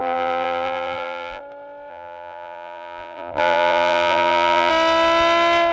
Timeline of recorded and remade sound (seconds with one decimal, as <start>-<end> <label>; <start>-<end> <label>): 0.0-1.4 remade; 1.4-1.9 recorded; 1.9-4.7 remade; 4.7-5.7 recorded